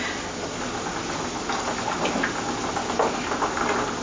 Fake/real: real